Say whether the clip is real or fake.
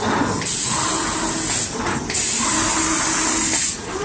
real